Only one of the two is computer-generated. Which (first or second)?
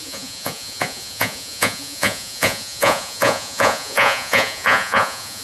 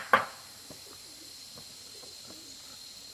first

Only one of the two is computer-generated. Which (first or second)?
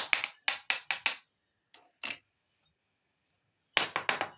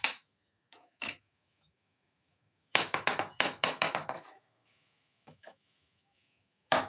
second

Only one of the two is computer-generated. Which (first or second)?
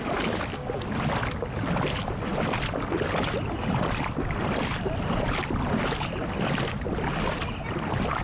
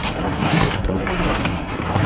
second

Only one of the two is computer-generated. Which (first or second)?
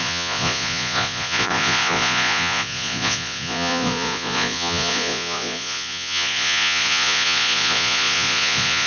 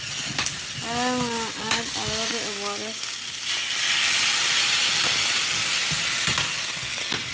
first